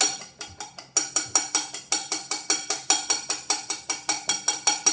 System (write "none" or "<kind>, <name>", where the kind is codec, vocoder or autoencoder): none